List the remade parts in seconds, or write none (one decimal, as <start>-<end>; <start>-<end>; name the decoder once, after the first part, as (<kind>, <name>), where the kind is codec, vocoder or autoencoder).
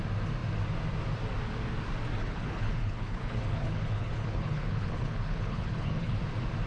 2.2-6.2 (codec, HILCodec)